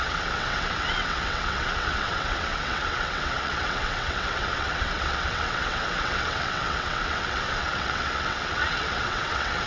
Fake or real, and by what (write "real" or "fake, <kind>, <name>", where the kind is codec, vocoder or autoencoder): fake, vocoder, WaveNeXt